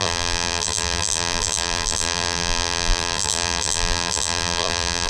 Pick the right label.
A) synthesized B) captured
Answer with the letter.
A